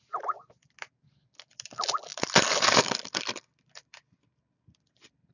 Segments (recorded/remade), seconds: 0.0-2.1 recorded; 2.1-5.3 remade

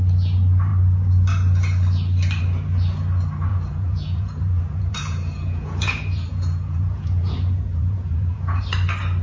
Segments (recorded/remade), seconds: 0.0-3.5 recorded; 3.5-8.6 remade; 8.6-9.2 recorded

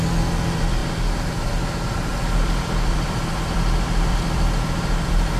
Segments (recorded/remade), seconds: 0.0-0.8 recorded; 0.8-1.5 remade; 1.5-2.1 recorded; 2.1-5.4 remade

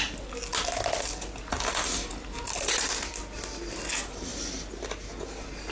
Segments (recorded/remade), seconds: 0.0-5.7 recorded

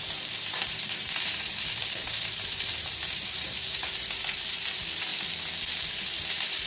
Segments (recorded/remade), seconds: 0.0-5.1 remade; 5.1-6.1 recorded; 6.1-6.7 remade

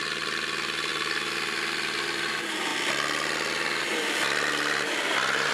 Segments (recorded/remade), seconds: 0.0-5.5 recorded

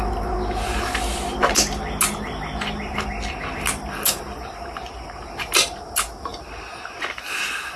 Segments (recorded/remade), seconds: 0.0-7.8 recorded

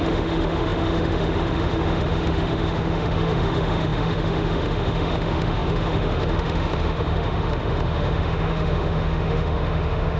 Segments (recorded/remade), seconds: 0.0-10.2 remade